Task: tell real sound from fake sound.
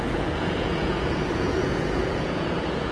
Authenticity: fake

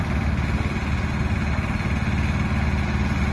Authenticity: real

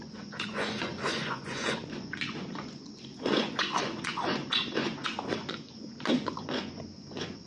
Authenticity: fake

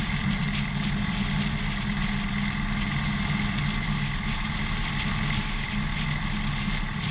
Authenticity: real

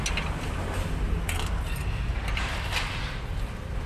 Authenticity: real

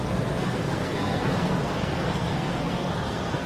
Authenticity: fake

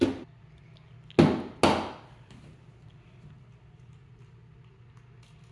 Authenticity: real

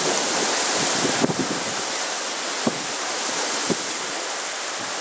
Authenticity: real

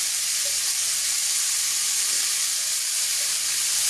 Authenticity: real